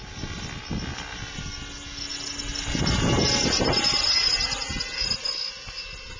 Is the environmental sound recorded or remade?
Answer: recorded